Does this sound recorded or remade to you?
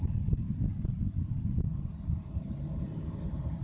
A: recorded